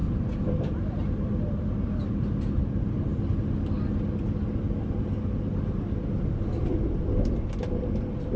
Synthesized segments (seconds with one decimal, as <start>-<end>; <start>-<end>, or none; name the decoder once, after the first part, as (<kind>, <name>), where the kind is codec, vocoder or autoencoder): none